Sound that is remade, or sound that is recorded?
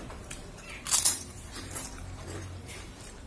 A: remade